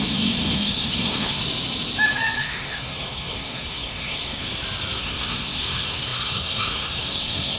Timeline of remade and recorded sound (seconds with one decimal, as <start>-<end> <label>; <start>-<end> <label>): 0.0-1.4 remade; 1.4-2.4 recorded; 2.4-4.5 remade; 4.5-5.0 recorded; 5.0-7.6 remade